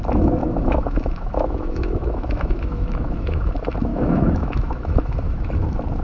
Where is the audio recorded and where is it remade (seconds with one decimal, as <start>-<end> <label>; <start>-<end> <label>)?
0.0-0.4 recorded; 0.4-3.5 remade; 3.5-3.9 recorded; 3.9-5.5 remade; 5.5-6.0 recorded